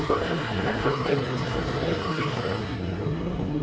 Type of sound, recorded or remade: remade